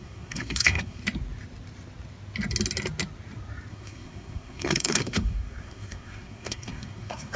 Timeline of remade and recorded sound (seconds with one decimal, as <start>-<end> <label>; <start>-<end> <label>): 0.0-1.0 remade; 1.0-3.7 recorded; 3.7-7.4 remade